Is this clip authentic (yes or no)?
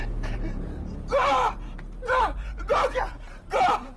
no